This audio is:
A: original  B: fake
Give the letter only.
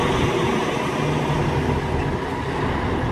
A